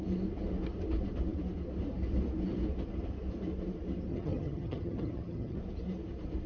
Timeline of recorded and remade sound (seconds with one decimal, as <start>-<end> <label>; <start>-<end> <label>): 0.0-4.1 recorded; 4.1-5.6 remade; 5.6-6.5 recorded